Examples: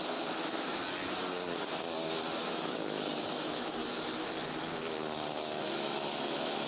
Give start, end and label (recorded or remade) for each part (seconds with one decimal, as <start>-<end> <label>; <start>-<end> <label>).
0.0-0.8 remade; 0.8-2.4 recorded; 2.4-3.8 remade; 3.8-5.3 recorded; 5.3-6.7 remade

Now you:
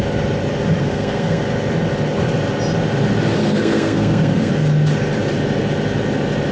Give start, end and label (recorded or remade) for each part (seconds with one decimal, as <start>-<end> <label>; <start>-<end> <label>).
0.0-0.8 recorded; 0.8-1.4 remade; 1.4-3.4 recorded; 3.4-4.5 remade; 4.5-6.5 recorded

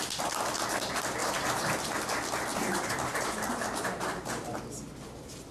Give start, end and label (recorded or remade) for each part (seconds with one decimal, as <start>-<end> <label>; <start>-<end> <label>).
0.0-1.2 recorded; 1.2-2.0 remade; 2.0-2.5 recorded; 2.5-4.6 remade; 4.6-5.5 recorded